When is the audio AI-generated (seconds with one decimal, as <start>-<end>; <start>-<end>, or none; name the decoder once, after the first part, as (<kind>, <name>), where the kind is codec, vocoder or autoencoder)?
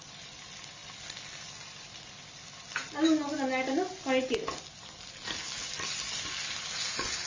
none